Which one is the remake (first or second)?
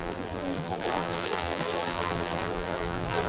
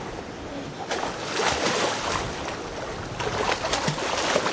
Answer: first